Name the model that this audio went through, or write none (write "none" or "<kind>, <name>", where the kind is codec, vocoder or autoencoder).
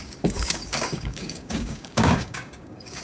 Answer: codec, DAC